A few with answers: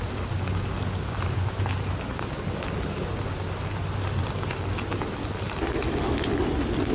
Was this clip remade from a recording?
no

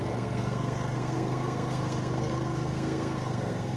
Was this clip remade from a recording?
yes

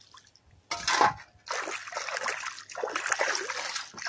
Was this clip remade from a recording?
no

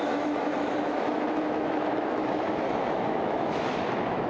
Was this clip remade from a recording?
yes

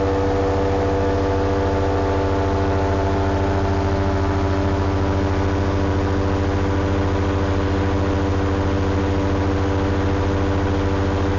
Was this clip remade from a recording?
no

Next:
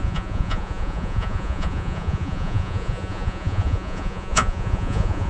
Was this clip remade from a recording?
yes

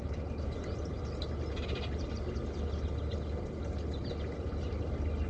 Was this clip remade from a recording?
no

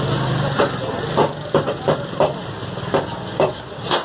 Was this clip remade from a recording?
no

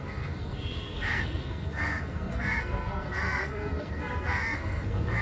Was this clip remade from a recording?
yes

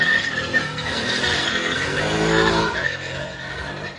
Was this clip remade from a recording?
yes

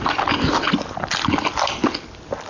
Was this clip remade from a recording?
no